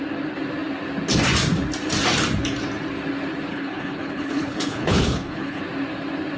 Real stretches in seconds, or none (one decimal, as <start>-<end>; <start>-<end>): 0.0-3.5; 5.6-6.4